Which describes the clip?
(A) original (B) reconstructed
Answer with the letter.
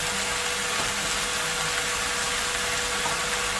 A